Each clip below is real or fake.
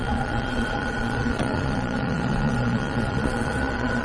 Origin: fake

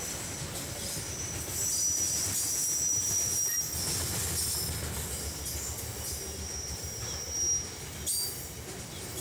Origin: real